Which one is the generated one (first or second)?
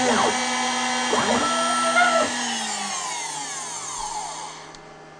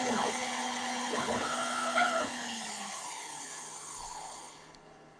second